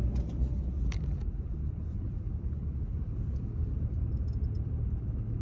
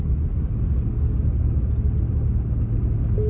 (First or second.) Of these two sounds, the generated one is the first